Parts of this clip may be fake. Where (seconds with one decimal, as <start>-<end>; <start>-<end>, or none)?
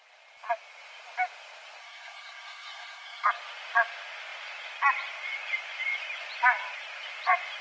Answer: 1.8-3.3